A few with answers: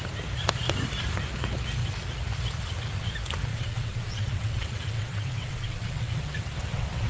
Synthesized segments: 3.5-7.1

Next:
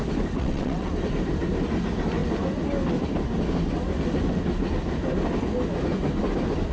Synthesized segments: 0.4-0.9

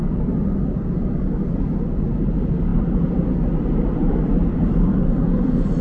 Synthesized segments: none